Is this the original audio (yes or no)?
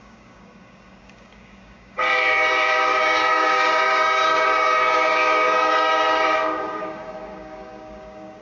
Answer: no